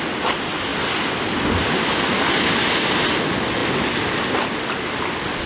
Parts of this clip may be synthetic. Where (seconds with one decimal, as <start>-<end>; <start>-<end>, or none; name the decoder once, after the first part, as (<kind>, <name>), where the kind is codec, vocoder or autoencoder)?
none